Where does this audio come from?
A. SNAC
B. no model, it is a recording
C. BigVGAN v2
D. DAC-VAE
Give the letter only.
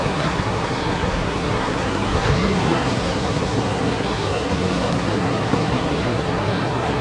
A